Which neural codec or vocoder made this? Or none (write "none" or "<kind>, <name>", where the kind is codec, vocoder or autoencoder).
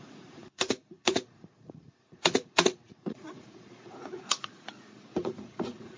vocoder, Vocos